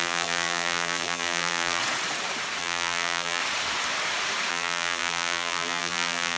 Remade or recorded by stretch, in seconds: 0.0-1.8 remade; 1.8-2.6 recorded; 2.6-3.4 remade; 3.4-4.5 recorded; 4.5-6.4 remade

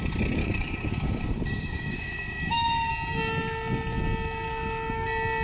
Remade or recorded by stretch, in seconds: 0.0-0.4 recorded; 0.4-2.9 remade; 2.9-5.4 recorded

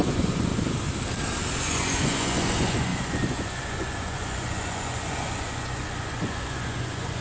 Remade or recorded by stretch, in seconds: 0.0-0.5 remade; 0.5-1.6 recorded; 1.6-7.2 remade

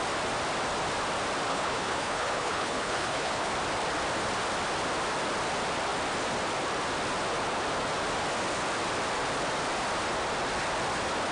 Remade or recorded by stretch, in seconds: 0.0-1.5 recorded; 1.5-3.5 remade; 3.5-11.3 recorded

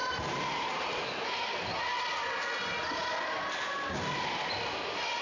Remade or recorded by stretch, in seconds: 0.0-0.9 remade; 0.9-5.2 recorded